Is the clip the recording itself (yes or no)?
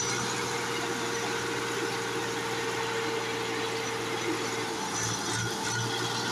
yes